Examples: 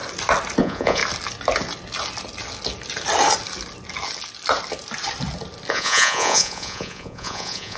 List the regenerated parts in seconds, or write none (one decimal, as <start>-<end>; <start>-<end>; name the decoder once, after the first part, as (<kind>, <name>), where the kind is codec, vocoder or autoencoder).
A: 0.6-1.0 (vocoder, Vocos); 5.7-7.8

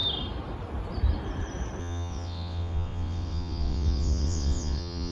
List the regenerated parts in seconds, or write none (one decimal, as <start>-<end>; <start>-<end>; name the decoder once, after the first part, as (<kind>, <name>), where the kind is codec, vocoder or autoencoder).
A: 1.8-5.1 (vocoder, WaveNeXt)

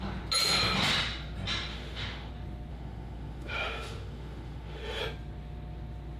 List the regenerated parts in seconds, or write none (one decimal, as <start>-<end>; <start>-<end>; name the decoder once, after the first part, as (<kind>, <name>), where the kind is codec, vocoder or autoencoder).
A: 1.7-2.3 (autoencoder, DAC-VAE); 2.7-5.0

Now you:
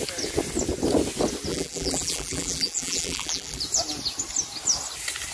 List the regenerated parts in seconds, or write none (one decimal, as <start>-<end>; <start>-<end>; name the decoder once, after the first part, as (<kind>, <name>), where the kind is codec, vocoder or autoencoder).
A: 1.5-3.6 (vocoder, BigVGAN v2)

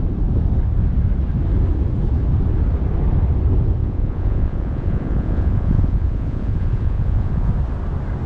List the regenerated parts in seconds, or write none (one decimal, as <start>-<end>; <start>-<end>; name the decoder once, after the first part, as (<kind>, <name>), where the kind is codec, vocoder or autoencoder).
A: 3.8-7.5 (vocoder, Vocos)

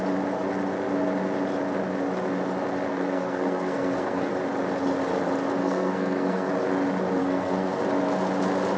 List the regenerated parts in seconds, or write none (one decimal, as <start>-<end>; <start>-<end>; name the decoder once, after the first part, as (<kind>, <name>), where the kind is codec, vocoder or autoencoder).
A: 2.9-4.3 (codec, SNAC); 5.6-6.5; 7.2-7.8

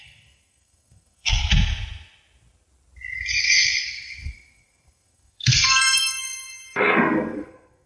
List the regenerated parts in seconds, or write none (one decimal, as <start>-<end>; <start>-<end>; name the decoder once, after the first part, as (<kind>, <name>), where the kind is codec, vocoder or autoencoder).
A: 0.0-1.4 (codec, SNAC); 3.4-7.9